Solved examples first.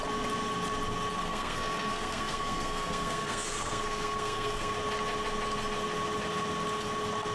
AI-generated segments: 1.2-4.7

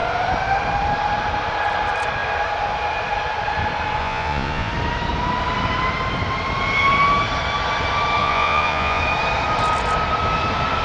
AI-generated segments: 4.0-4.7; 8.2-9.0

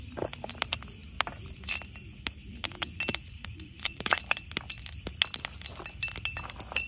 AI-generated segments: 3.1-4.2

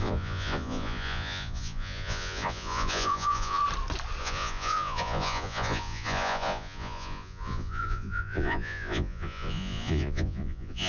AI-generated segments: 0.0-3.6; 4.2-10.9